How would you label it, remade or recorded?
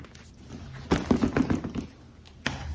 recorded